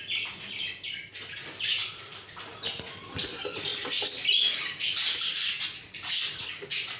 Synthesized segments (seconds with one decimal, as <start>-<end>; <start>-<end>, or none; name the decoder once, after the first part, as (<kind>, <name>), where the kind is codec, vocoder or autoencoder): none